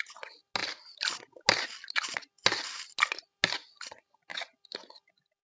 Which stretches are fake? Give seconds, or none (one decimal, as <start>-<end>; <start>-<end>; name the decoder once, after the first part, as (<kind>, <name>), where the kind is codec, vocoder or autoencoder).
none